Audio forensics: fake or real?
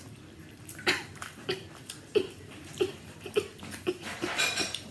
fake